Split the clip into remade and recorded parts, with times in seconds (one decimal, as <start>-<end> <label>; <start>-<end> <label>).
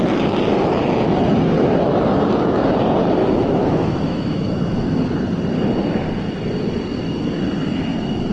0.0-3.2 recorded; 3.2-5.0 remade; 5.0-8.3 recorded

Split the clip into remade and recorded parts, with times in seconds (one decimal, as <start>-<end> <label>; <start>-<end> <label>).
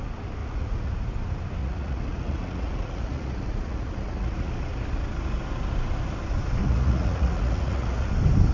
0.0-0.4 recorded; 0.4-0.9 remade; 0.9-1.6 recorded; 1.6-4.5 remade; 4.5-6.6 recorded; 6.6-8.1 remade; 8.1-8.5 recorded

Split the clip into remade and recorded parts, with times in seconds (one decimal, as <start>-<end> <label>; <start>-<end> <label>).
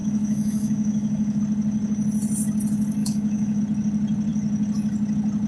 0.0-1.4 remade; 1.4-3.0 recorded; 3.0-3.6 remade; 3.6-5.5 recorded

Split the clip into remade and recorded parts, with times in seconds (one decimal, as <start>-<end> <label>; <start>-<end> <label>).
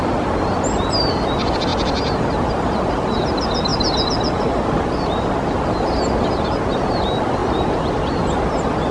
0.0-8.9 recorded